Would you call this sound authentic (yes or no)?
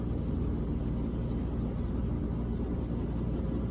yes